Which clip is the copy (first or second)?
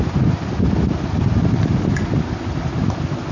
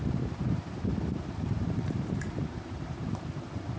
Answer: second